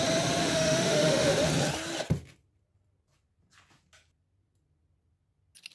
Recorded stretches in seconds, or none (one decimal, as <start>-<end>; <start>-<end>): 0.0-0.4; 1.5-5.7

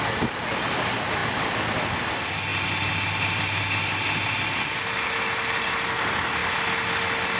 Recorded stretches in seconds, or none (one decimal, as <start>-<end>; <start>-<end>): 0.0-7.4

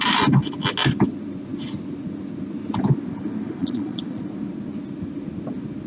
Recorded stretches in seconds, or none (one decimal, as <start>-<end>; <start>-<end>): 0.0-3.6; 4.2-5.9

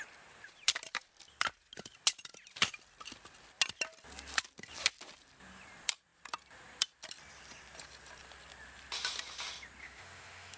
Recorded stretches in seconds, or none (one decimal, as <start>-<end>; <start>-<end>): 0.0-9.8

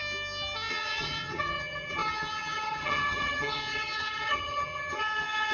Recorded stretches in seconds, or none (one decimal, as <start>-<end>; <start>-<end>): 0.0-0.7

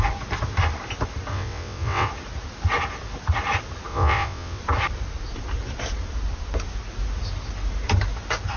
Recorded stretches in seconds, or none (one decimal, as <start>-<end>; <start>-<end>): 0.0-1.3; 2.1-3.9; 4.6-8.6

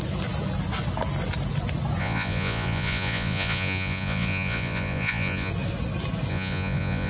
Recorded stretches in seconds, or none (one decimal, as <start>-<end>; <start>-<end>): 0.0-2.0; 5.5-6.3

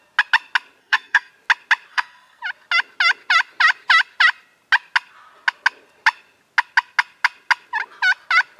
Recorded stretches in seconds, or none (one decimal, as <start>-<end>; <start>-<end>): 0.0-0.8; 1.3-1.9; 2.4-8.6